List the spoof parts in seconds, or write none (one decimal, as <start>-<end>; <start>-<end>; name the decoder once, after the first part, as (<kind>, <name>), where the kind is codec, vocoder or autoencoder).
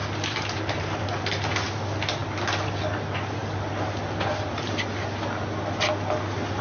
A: 0.0-1.0 (vocoder, BigVGAN v2)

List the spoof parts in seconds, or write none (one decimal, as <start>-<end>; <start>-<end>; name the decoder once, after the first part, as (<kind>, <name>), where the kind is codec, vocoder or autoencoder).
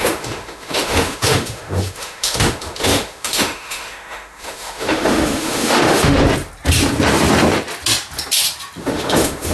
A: 0.0-6.2 (autoencoder, DAC-VAE); 8.8-9.5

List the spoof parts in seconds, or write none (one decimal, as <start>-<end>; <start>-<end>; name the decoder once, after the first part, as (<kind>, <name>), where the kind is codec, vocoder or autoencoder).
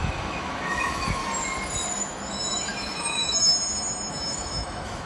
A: 0.0-1.2 (autoencoder, DAC-VAE); 2.0-3.5; 4.1-5.1